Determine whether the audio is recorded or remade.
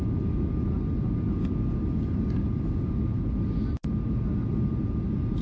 recorded